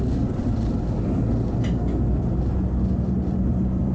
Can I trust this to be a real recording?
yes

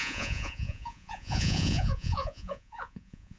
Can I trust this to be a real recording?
no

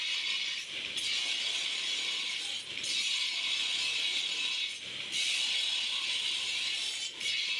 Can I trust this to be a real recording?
yes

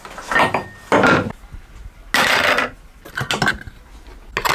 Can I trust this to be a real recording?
yes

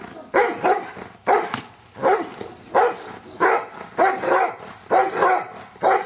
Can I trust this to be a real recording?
yes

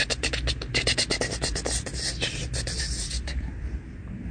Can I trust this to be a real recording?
yes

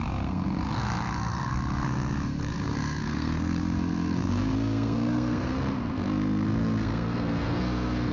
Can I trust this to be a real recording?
no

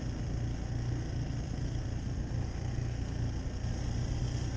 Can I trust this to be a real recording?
yes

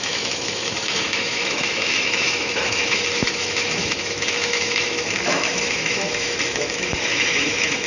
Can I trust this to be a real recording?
no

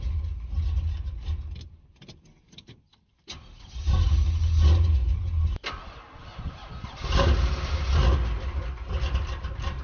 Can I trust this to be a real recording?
yes